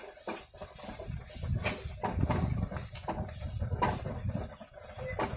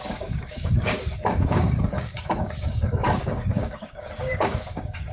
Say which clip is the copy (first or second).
second